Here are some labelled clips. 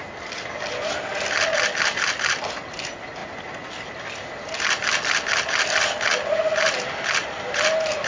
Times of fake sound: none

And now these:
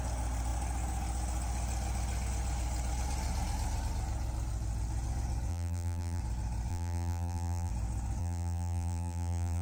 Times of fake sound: 5.5-6.2 (vocoder, BigVGAN v2); 6.7-7.7; 8.2-9.6